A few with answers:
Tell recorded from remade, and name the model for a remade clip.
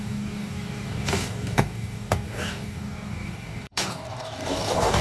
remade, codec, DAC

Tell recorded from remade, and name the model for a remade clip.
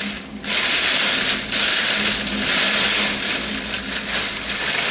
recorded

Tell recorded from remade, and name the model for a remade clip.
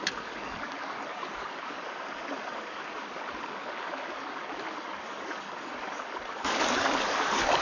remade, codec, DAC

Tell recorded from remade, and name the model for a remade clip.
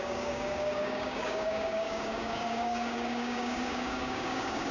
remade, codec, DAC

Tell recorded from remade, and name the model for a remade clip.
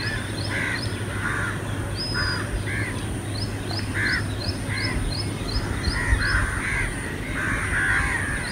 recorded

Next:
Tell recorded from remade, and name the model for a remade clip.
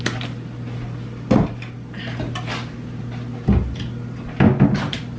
recorded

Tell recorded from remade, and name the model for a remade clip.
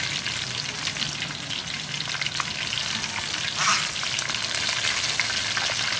recorded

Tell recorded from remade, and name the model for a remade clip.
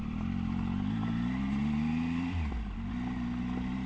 recorded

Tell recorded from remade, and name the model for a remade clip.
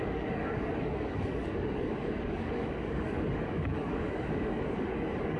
remade, codec, DAC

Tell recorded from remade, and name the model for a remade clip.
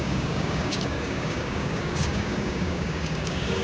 remade, codec, DAC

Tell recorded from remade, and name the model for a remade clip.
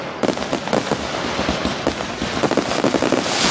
recorded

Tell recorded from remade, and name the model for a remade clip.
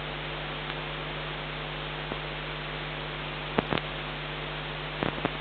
recorded